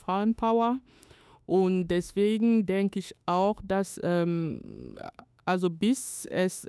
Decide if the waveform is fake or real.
fake